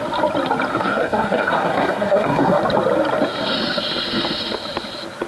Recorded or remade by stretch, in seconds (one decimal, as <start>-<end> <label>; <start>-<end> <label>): 0.0-0.7 recorded; 0.7-2.6 remade; 2.6-5.3 recorded